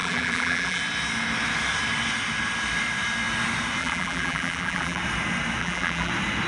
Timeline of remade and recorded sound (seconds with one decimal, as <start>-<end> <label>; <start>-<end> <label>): 0.0-0.8 remade; 0.8-3.8 recorded; 3.8-5.0 remade; 5.0-5.6 recorded; 5.6-6.1 remade; 6.1-6.5 recorded